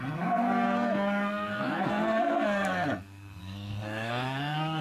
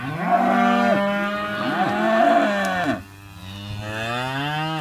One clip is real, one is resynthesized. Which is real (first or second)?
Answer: second